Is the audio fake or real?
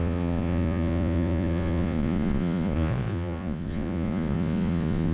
fake